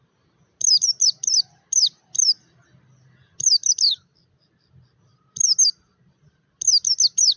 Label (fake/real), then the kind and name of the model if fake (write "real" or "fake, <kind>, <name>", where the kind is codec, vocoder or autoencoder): real